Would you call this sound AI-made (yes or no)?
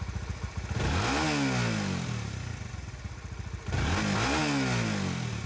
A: no